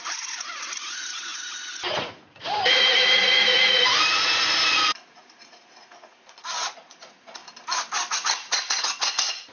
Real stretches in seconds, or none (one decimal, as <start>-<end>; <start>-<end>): 7.4-8.1